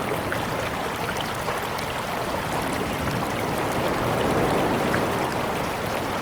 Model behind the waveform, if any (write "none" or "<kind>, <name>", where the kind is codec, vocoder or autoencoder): none